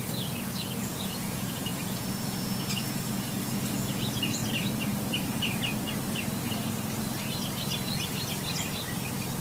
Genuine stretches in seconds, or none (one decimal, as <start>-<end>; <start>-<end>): 4.4-9.4